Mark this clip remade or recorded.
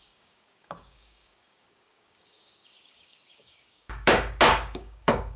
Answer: remade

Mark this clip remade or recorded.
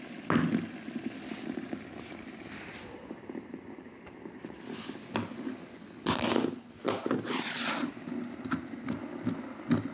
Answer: recorded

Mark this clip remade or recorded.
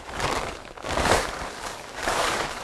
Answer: remade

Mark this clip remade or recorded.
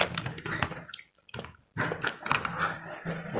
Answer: recorded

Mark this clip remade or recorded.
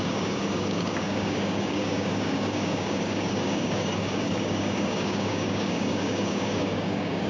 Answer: remade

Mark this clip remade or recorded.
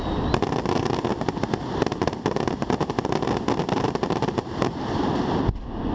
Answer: recorded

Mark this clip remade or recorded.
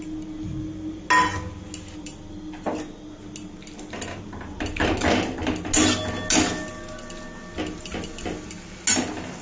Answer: recorded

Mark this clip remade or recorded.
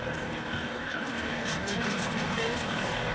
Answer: remade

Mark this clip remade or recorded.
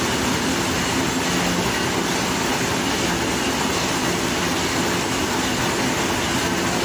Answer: recorded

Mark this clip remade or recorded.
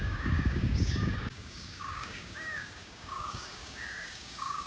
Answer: remade